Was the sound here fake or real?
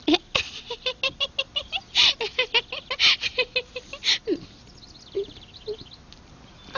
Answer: real